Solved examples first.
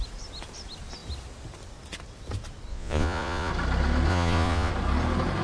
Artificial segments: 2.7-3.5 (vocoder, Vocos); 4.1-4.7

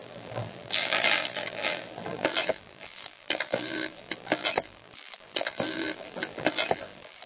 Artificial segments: 0.0-7.3 (vocoder, BigVGAN v2)

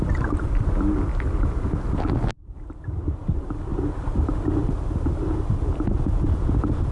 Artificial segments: none

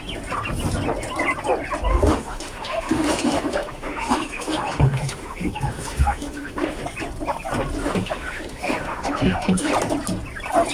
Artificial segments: 1.9-6.8 (autoencoder, DAC-VAE); 7.8-9.7

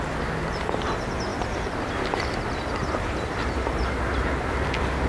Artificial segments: none

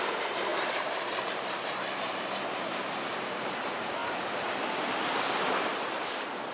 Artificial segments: 0.0-4.0 (vocoder, BigVGAN v2); 5.1-5.7

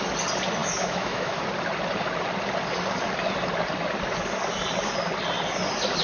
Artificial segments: 0.6-1.4 (autoencoder, DAC-VAE)

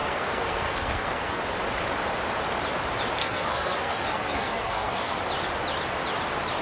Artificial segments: 0.0-1.4 (codec, SNAC); 3.2-5.2